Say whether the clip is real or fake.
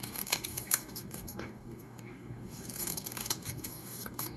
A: fake